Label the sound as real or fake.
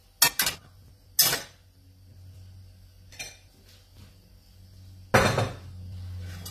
real